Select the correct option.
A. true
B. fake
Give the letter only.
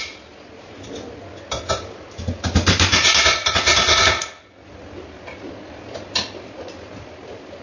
A